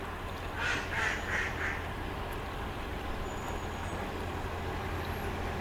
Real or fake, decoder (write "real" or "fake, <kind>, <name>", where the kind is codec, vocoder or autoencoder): real